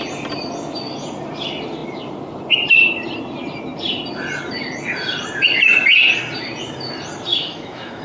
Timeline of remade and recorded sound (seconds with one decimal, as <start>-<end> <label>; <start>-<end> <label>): 0.0-7.3 recorded; 7.3-8.0 remade